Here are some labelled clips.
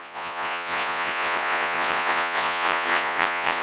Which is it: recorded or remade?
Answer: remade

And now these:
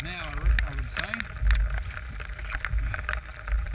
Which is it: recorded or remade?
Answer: recorded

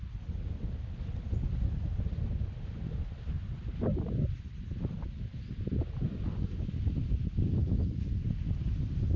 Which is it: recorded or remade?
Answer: recorded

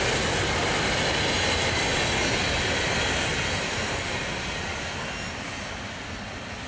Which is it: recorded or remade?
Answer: recorded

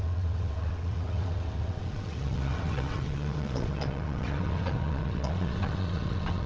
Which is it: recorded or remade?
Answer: remade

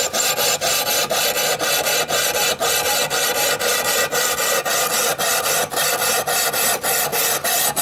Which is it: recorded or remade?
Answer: recorded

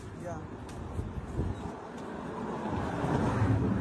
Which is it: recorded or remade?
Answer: recorded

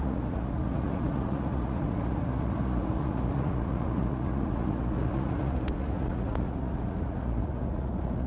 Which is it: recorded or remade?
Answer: remade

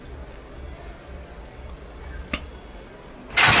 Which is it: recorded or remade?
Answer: recorded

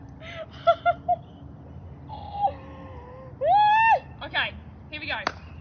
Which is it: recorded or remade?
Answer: recorded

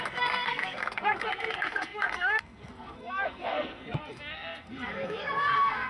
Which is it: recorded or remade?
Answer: remade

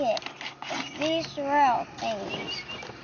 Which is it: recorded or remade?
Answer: recorded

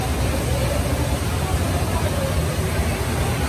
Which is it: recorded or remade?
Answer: recorded